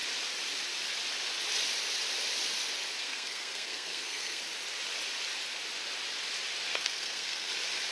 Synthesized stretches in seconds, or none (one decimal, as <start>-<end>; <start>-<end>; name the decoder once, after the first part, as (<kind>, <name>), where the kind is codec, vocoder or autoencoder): 3.0-4.4 (codec, SNAC); 6.7-7.5